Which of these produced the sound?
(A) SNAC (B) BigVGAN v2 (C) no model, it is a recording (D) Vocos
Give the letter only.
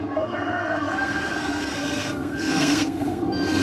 A